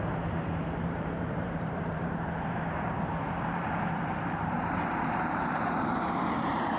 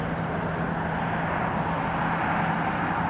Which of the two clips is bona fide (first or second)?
second